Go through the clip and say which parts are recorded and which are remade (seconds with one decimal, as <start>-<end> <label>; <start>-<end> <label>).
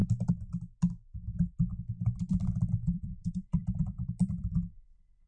0.0-2.3 recorded; 2.3-5.3 remade